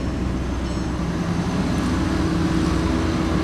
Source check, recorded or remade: recorded